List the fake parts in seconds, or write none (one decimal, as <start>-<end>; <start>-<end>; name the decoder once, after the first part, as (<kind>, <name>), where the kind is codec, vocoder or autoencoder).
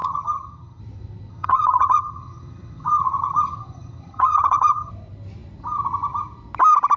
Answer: 0.0-0.8 (vocoder, HiFi-GAN); 1.3-4.9